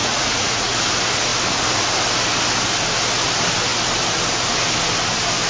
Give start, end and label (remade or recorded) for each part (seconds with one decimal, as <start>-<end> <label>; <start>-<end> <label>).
0.0-0.7 remade; 0.7-5.5 recorded